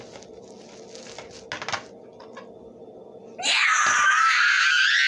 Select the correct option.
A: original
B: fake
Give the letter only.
A